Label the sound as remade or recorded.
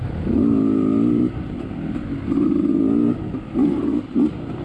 recorded